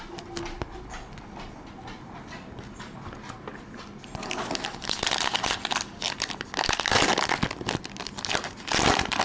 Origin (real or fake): real